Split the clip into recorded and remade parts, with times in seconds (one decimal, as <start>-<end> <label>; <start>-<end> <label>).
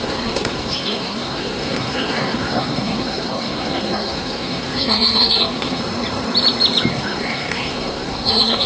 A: 0.0-5.8 remade; 5.8-6.9 recorded; 6.9-8.7 remade